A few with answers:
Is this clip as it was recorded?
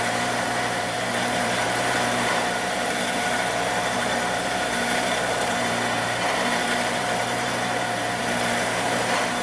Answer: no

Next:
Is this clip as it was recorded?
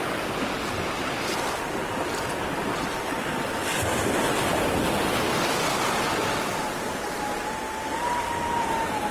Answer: yes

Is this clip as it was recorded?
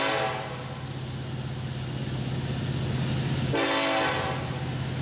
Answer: yes